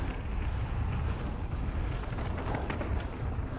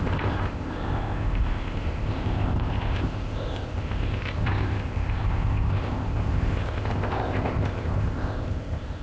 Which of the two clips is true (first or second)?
first